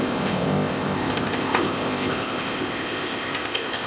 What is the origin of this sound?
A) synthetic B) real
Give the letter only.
A